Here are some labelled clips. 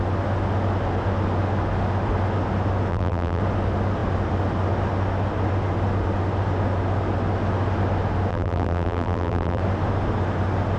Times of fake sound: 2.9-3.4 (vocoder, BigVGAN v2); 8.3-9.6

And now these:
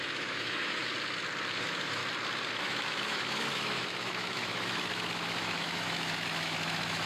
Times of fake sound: 0.0-0.8 (autoencoder, DAC-VAE); 1.6-2.0; 2.6-7.1

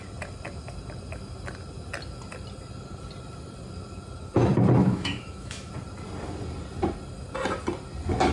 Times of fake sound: 4.8-5.7 (autoencoder, DAC-VAE)

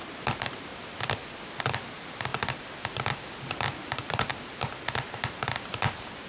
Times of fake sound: 0.0-0.7 (vocoder, BigVGAN v2); 1.6-2.3; 3.9-4.3

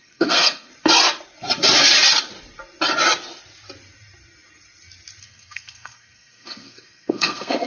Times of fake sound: 0.0-0.7 (codec, SNAC); 5.2-7.7